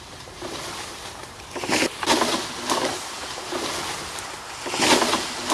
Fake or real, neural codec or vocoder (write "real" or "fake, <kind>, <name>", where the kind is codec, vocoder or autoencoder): real